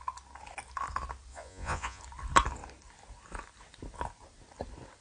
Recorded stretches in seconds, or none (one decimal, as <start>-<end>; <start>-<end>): 0.0-1.3; 2.0-5.0